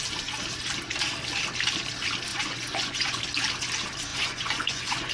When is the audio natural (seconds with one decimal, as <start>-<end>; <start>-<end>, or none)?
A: 0.0-2.3; 3.2-4.1